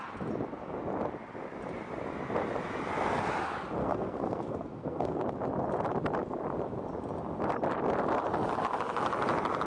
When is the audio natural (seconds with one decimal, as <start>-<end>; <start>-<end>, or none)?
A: 0.0-3.8; 5.2-9.7